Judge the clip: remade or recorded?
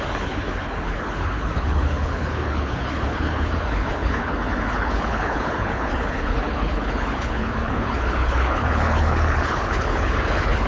remade